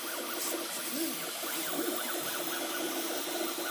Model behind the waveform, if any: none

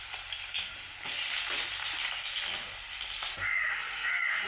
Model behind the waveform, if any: vocoder, BigVGAN v2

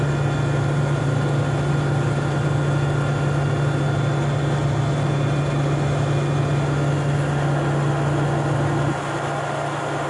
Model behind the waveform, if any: none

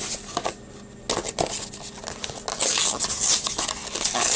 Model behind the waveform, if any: none